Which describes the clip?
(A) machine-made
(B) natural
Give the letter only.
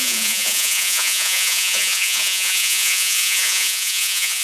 A